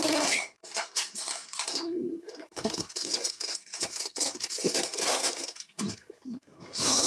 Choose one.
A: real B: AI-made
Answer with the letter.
B